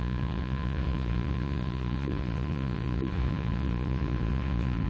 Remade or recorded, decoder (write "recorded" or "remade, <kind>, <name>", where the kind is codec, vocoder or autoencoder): remade, vocoder, Vocos